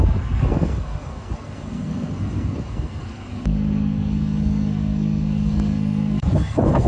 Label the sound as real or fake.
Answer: fake